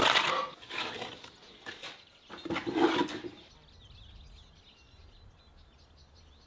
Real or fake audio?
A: real